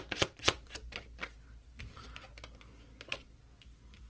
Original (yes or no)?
yes